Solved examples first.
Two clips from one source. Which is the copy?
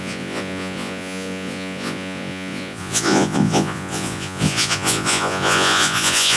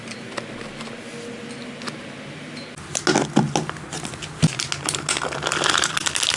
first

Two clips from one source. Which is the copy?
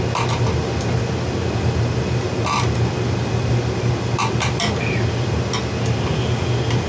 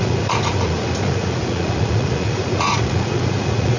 second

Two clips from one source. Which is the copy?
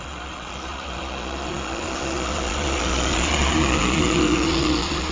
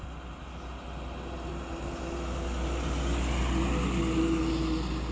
first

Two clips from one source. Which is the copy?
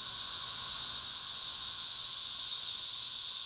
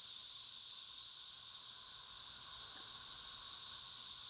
first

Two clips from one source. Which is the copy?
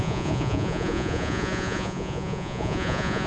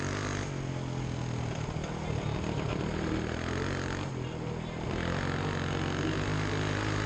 first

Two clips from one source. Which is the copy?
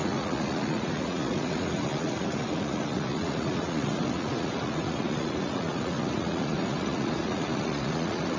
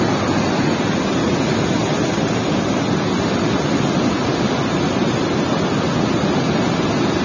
first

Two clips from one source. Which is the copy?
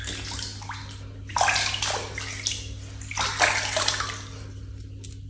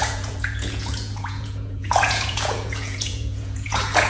second